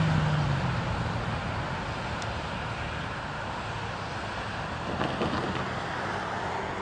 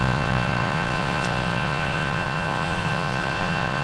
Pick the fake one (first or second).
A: second